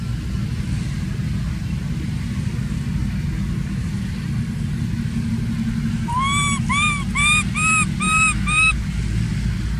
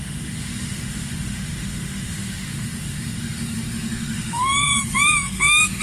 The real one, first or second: first